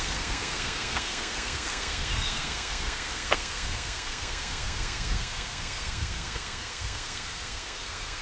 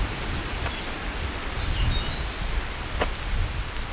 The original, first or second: second